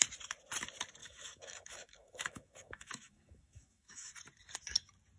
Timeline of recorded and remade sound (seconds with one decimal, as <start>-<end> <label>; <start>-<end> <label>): 0.0-1.0 recorded; 1.0-4.1 remade; 4.1-5.2 recorded